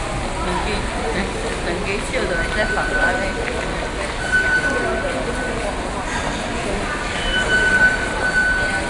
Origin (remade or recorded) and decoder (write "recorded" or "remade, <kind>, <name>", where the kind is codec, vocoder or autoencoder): recorded